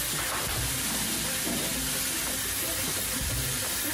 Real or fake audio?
real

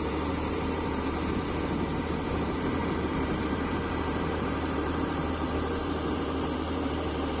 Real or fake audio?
fake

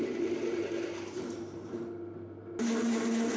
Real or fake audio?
real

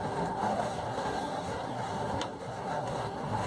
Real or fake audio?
fake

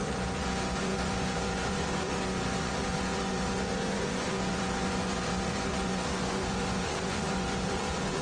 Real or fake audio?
fake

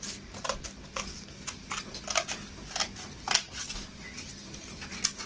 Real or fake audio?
real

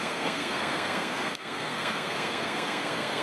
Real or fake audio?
fake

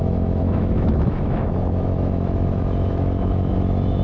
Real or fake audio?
fake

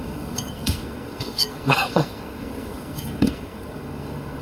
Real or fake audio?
fake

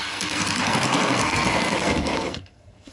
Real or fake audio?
fake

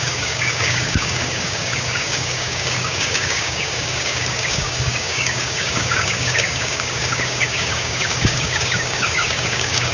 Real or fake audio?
fake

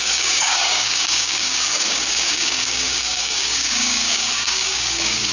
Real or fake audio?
fake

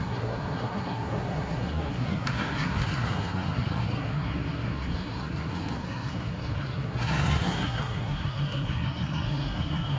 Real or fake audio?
fake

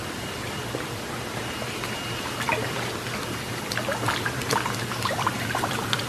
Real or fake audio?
fake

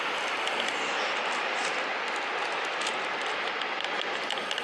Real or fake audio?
real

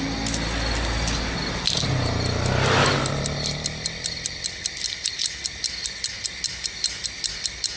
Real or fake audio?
real